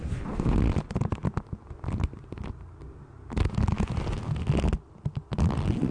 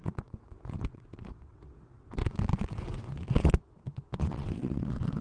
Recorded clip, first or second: first